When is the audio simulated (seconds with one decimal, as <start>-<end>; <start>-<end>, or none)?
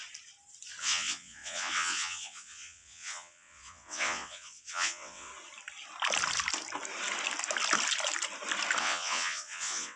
0.8-5.3; 8.8-10.0